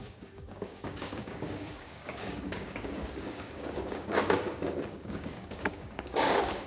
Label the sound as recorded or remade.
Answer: remade